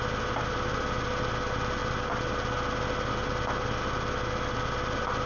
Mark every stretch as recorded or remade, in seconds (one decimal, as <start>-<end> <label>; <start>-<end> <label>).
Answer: 0.0-5.3 recorded

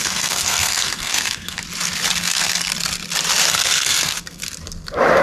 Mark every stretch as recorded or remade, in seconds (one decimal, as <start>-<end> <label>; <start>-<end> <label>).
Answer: 0.0-1.6 remade; 1.6-2.2 recorded; 2.2-2.7 remade; 2.7-3.5 recorded; 3.5-4.4 remade; 4.4-5.2 recorded

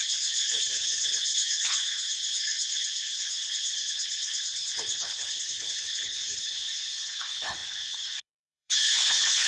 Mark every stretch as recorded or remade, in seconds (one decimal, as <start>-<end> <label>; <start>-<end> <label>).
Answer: 0.0-9.5 remade

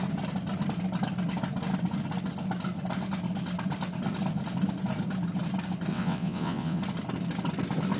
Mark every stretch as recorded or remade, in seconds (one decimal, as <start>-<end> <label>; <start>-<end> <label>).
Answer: 0.0-5.9 recorded; 5.9-6.8 remade; 6.8-8.0 recorded

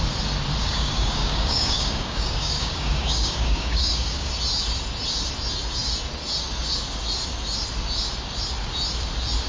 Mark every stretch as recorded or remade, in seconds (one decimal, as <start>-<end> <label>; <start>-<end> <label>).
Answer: 0.0-0.6 recorded; 0.6-4.3 remade; 4.3-9.5 recorded

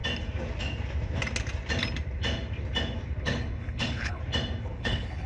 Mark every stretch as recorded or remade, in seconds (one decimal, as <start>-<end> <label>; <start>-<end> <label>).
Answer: 0.0-3.2 recorded; 3.2-4.2 remade; 4.2-4.8 recorded; 4.8-5.3 remade